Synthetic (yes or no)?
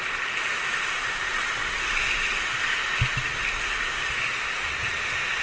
no